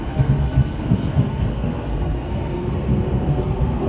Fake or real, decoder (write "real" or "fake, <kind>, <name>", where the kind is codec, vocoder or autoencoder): fake, codec, SNAC